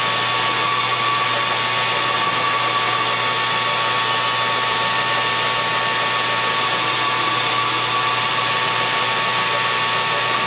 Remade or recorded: recorded